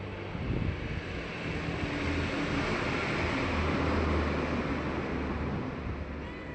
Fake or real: real